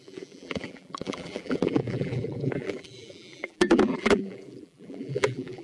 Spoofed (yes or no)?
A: yes